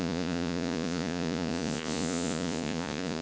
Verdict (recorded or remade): remade